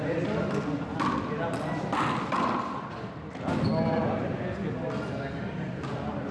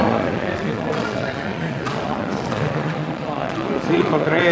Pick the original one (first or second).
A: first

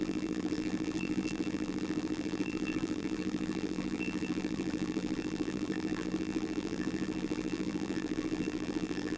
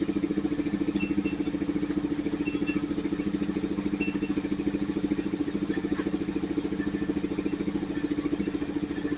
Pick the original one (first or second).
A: second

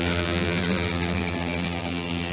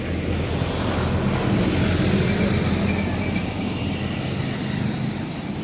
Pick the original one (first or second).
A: second